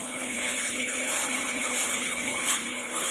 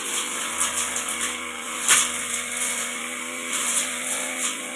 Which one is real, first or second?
second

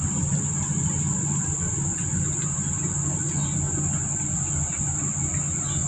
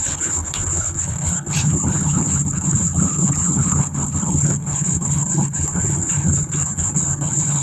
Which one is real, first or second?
first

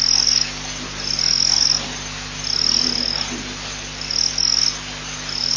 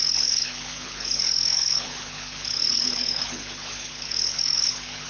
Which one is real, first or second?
first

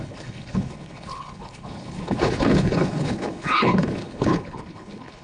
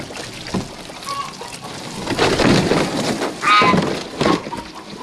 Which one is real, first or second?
second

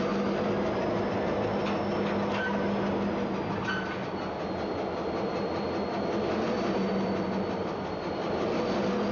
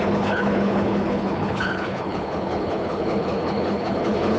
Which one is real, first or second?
first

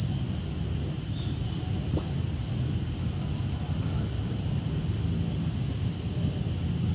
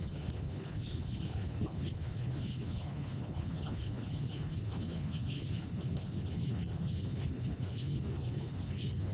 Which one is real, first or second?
first